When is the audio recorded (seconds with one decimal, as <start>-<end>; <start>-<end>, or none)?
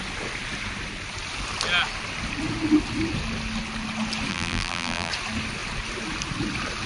0.0-4.3; 5.1-6.9